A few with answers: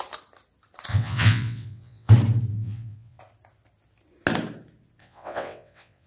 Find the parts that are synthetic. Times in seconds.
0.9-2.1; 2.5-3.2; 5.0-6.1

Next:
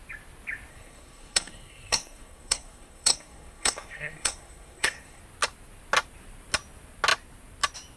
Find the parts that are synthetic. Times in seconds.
0.7-5.2